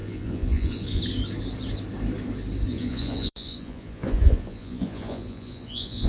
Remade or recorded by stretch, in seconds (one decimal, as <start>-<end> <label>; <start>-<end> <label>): 0.0-1.0 remade; 1.0-2.7 recorded; 2.7-6.1 remade